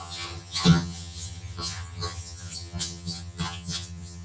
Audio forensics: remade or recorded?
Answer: remade